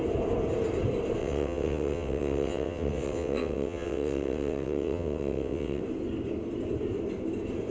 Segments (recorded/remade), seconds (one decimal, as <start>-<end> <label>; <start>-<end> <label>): 0.0-1.2 recorded; 1.2-5.8 remade; 5.8-7.7 recorded